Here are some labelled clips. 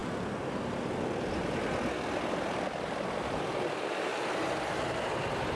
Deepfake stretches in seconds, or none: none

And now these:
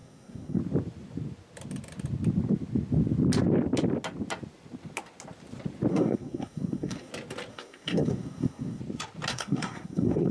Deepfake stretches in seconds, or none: 0.0-0.6 (codec, SNAC); 5.9-7.1; 7.5-8.8; 9.3-10.3

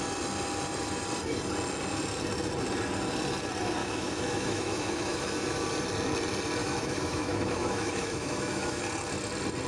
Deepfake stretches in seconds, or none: 3.8-5.6 (autoencoder, DAC-VAE); 6.6-8.8

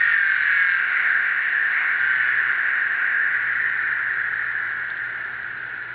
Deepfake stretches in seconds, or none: 0.8-2.0 (codec, ZipCodec); 2.5-3.3

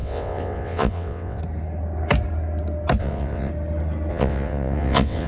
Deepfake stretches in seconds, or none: 0.0-1.4 (vocoder, WaveNeXt); 3.0-3.5; 4.1-5.3

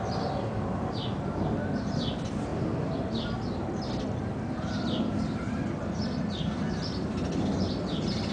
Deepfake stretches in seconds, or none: none

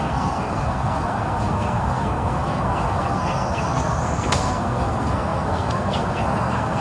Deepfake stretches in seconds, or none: 0.0-6.8 (codec, SNAC)